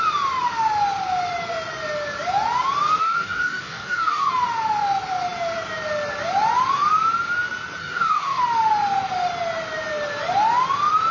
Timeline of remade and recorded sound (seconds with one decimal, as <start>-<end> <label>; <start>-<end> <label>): 0.0-3.0 recorded; 3.0-4.3 remade; 4.3-7.8 recorded; 7.8-8.4 remade; 8.4-11.1 recorded